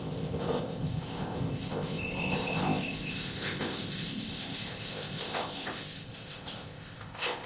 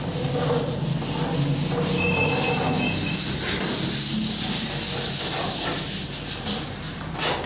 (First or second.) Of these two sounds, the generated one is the first